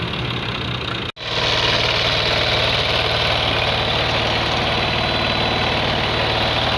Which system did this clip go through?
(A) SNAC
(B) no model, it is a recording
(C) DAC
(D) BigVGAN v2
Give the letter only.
B